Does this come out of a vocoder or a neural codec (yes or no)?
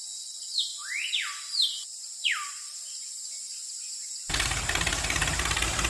no